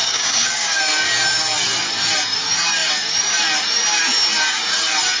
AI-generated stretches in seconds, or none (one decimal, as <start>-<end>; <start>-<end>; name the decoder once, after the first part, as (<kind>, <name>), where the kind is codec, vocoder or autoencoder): 0.0-0.8 (codec, DAC)